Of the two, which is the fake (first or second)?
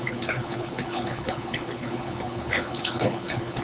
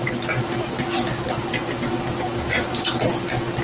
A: first